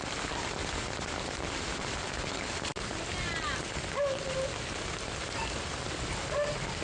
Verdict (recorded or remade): recorded